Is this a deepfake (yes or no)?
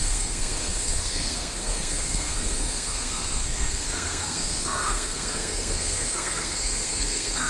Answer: yes